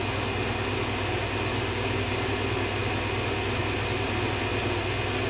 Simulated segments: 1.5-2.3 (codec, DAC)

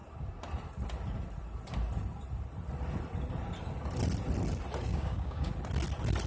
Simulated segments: 4.9-5.5 (codec, DAC)

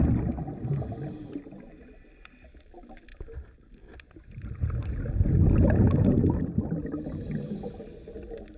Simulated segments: none

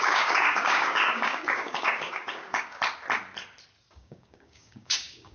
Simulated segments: 0.0-2.8 (codec, DAC); 3.9-5.3

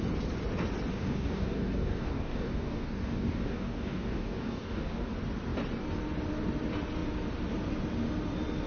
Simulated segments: 0.9-5.1 (codec, DAC)

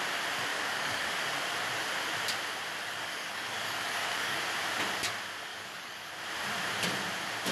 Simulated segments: 0.5-1.2 (codec, DAC); 2.8-4.4; 5.5-6.1

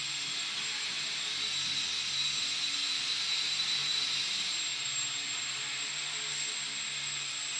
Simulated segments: none

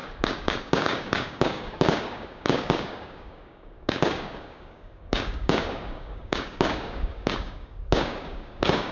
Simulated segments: 0.0-8.9 (codec, DAC)